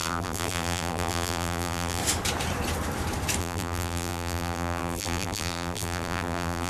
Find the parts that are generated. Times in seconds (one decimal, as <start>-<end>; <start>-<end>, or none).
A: 0.0-2.0; 3.4-6.7